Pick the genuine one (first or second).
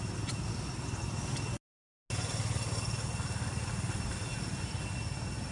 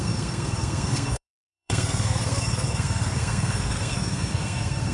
first